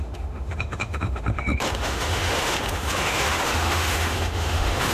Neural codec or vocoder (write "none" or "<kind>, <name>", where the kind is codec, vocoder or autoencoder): autoencoder, DAC-VAE